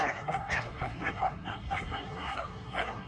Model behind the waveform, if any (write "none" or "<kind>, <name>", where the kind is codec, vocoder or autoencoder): codec, SNAC